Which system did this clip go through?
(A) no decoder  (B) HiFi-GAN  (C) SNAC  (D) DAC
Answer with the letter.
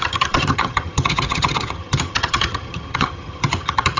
B